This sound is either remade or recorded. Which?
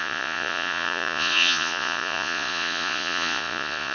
remade